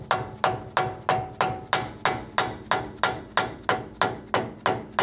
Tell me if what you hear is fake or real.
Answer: real